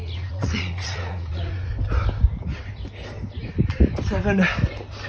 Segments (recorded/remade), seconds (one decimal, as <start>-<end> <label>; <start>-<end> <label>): 0.0-1.7 remade; 1.7-5.1 recorded

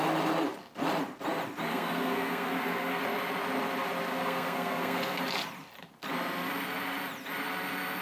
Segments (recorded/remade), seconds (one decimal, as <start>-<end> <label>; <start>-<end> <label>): 0.0-1.7 recorded; 1.7-3.0 remade; 3.0-4.1 recorded; 4.1-5.2 remade; 5.2-8.0 recorded

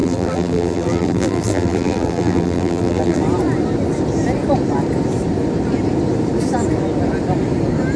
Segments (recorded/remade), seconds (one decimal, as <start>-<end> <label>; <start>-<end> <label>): 0.0-3.2 remade; 3.2-8.0 recorded

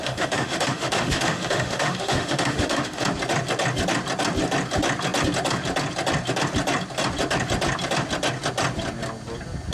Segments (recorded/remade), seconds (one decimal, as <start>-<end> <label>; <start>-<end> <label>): 0.0-3.0 remade; 3.0-9.7 recorded